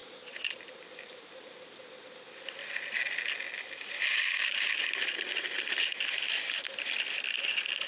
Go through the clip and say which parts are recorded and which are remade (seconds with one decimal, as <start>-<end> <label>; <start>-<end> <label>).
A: 0.0-0.6 remade; 0.6-7.9 recorded